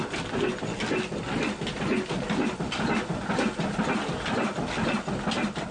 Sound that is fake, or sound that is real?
real